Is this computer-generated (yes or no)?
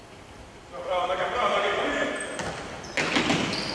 no